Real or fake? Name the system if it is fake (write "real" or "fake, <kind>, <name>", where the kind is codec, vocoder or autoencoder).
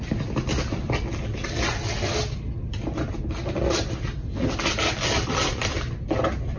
real